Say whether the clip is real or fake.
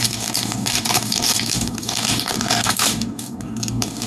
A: fake